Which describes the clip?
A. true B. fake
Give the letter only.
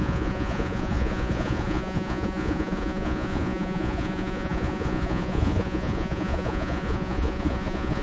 B